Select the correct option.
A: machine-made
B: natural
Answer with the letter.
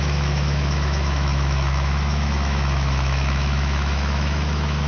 A